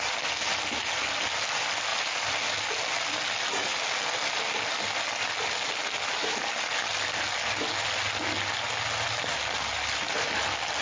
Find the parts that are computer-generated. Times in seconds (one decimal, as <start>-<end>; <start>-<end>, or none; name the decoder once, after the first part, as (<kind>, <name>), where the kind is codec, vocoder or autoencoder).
none